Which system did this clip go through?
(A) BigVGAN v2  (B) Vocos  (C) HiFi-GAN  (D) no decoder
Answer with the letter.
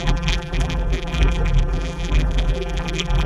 A